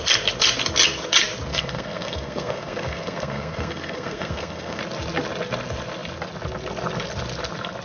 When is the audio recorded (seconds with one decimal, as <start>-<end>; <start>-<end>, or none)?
0.0-1.5; 4.8-7.8